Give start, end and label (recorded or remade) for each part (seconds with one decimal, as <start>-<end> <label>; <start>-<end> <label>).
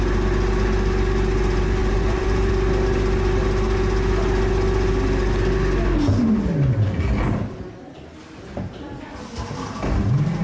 0.0-1.8 recorded; 1.8-2.5 remade; 2.5-10.4 recorded